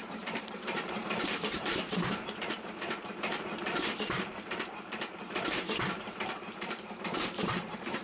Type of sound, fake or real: fake